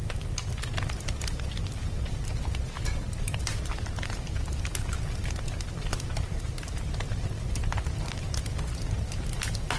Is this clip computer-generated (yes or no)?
no